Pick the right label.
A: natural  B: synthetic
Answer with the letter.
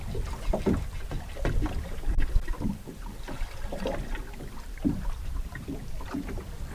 B